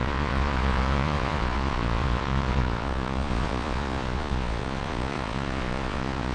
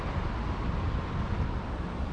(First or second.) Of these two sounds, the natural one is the second